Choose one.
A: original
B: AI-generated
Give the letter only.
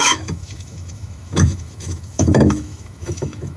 B